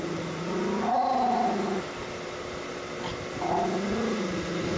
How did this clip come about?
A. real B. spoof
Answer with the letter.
A